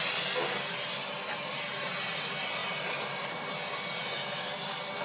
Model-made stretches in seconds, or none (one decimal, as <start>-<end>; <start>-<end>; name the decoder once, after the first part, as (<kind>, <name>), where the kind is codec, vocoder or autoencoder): 2.6-3.7 (vocoder, BigVGAN v2)

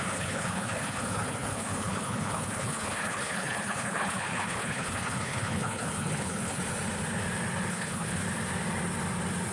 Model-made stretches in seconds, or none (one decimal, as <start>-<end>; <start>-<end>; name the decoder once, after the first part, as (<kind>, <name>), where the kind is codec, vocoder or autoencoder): 0.0-6.6 (codec, HILCodec); 7.7-8.2

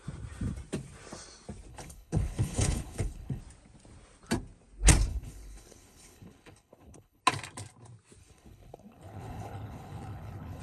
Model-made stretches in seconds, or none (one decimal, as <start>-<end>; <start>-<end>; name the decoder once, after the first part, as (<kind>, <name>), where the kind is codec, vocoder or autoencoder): 1.7-3.4 (codec, HILCodec); 5.1-7.2; 8.2-10.6

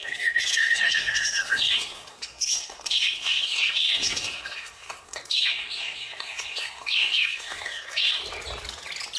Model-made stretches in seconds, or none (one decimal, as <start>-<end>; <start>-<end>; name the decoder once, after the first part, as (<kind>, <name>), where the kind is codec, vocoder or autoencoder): 0.0-8.2 (codec, SNAC)

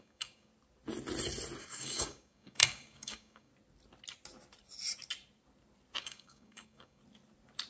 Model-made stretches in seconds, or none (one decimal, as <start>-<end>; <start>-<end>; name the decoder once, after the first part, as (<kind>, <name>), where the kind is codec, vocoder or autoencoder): 0.0-0.5 (codec, DAC); 1.6-3.5; 6.0-7.0